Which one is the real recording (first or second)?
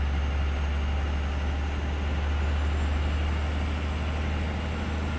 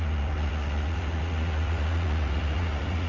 first